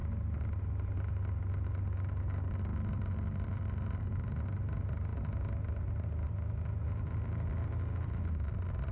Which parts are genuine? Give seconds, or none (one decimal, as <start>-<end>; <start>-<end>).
0.0-8.9